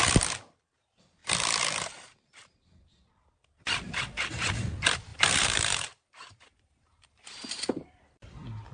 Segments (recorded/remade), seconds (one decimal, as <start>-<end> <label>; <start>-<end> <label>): 0.0-5.1 recorded; 5.1-8.0 remade; 8.0-8.7 recorded